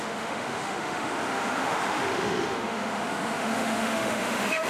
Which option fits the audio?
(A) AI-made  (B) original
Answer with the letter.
A